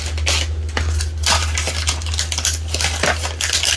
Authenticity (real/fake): real